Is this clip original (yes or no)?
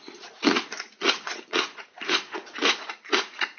no